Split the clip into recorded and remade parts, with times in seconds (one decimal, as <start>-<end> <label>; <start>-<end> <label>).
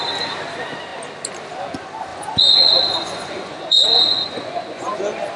0.0-2.1 recorded; 2.1-5.0 remade; 5.0-5.4 recorded